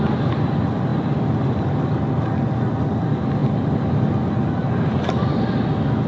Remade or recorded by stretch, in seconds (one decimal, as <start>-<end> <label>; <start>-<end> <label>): 0.0-6.1 recorded